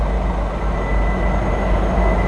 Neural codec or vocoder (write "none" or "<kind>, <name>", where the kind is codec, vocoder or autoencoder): none